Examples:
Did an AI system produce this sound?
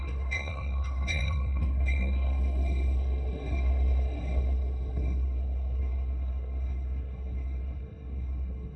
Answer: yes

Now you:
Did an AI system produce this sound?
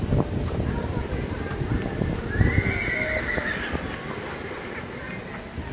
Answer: no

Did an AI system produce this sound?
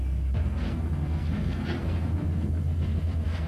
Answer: yes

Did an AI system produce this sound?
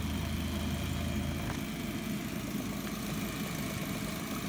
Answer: no